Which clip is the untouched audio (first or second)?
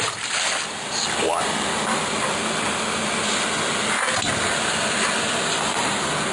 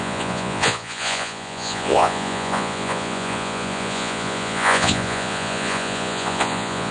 first